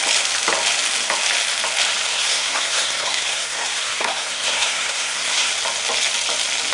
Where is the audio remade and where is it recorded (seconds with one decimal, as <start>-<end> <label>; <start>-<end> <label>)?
0.0-2.1 recorded; 2.1-5.5 remade; 5.5-6.7 recorded